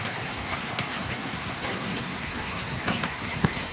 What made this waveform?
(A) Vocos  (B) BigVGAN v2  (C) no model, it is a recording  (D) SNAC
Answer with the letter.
D